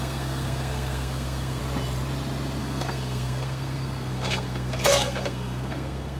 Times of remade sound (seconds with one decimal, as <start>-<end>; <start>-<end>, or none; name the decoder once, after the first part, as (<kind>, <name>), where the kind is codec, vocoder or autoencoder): 0.0-1.6 (codec, SNAC); 2.6-6.2